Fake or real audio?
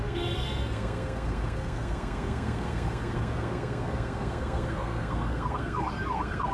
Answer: fake